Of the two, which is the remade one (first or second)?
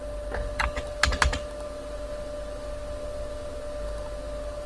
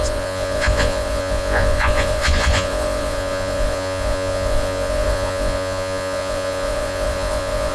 second